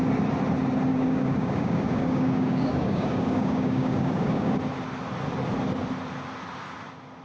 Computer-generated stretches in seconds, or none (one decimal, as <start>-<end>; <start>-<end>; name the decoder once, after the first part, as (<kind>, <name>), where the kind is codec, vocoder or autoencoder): 0.9-4.6 (codec, DAC)